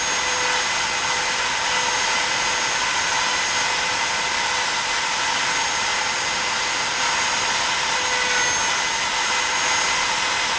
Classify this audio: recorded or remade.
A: recorded